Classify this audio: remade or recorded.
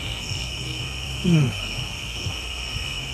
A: remade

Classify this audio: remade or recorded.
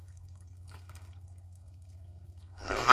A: remade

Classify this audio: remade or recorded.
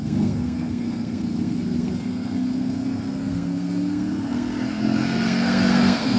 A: remade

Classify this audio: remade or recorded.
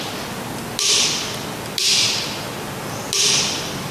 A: recorded